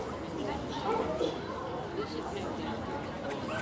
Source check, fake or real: real